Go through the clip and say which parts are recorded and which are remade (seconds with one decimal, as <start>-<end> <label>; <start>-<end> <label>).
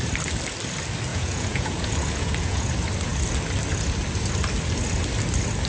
0.0-1.1 recorded; 1.1-2.7 remade; 2.7-5.7 recorded